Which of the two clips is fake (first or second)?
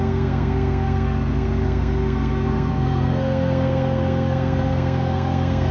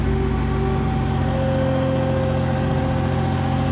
first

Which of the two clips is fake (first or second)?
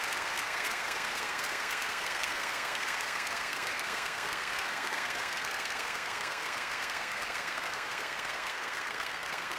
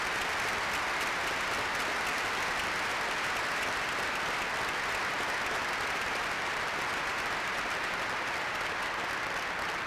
first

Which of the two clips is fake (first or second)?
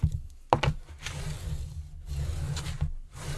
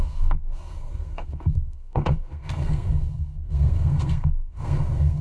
second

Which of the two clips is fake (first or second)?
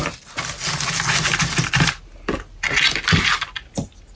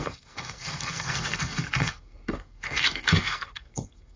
second